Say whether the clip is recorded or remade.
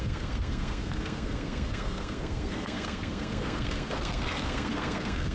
remade